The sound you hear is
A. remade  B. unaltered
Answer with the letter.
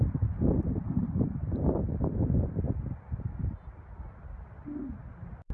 B